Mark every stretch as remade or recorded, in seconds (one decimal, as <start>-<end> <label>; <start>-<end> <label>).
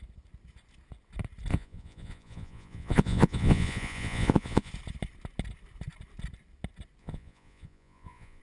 0.0-1.5 recorded; 1.5-4.7 remade; 4.7-7.0 recorded; 7.0-8.4 remade